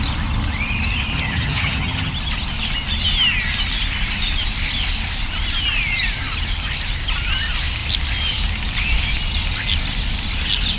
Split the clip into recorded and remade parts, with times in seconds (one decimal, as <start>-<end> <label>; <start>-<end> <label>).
0.0-1.1 recorded; 1.1-2.1 remade; 2.1-10.8 recorded